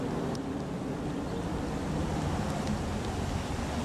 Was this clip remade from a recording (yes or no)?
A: no